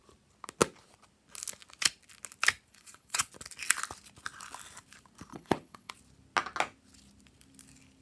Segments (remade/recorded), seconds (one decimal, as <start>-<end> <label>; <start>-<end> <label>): 0.0-2.7 recorded; 2.7-3.3 remade; 3.3-5.3 recorded; 5.3-5.9 remade; 5.9-8.0 recorded